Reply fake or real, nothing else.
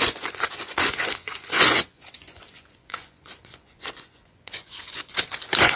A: fake